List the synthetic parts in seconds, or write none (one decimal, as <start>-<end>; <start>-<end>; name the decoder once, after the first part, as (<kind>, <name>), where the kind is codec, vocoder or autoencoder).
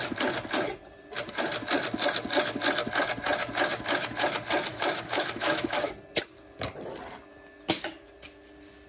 4.7-5.9 (autoencoder, DAC-VAE)